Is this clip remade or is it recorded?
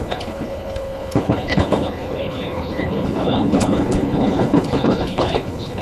remade